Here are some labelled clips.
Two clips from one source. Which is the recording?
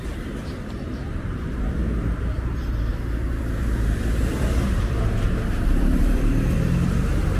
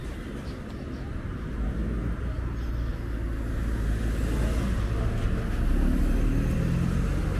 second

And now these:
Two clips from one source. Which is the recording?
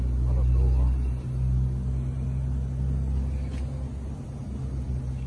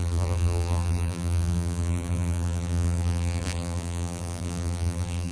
first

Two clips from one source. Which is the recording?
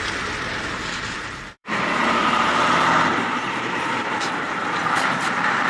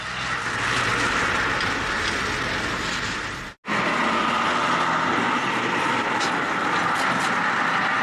second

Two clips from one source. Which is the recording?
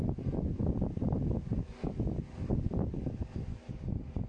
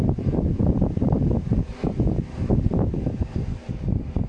first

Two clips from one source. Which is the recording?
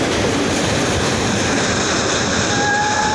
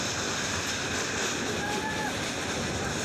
first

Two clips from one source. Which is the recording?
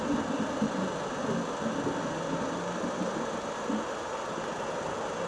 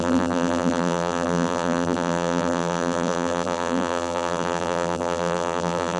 first